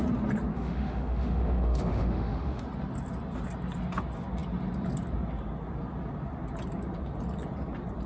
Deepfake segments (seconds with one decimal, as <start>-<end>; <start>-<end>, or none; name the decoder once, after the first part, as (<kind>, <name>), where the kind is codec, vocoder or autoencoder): 0.5-2.6 (autoencoder, DAC-VAE)